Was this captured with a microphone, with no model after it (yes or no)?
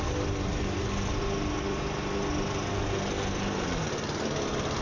yes